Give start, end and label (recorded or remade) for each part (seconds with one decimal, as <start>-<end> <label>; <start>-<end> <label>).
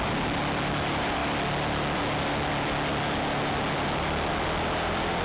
0.0-5.2 recorded